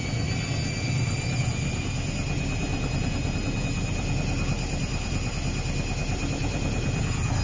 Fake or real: fake